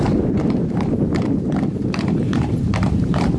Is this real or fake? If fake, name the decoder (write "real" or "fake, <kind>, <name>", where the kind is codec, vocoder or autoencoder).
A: fake, vocoder, BigVGAN v2